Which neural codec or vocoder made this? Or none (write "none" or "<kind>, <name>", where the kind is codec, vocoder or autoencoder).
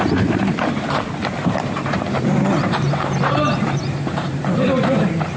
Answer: vocoder, BigVGAN v2